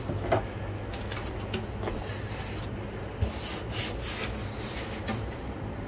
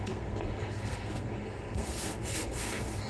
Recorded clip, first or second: first